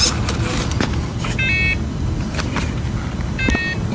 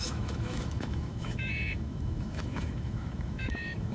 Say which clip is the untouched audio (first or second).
first